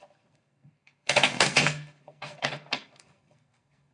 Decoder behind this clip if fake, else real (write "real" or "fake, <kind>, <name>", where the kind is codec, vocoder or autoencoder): fake, codec, SNAC